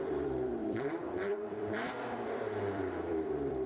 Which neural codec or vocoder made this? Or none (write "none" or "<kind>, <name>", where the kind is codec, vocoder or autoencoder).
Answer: vocoder, BigVGAN v2